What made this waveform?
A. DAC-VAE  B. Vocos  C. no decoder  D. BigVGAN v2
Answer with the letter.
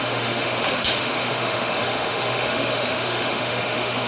A